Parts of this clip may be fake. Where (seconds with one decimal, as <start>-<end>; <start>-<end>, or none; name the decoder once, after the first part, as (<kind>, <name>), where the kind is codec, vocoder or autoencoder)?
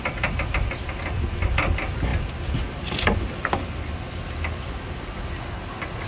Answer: none